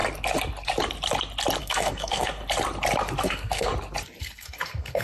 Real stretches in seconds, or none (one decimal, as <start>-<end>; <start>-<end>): 0.0-1.6; 2.4-3.2; 3.7-4.2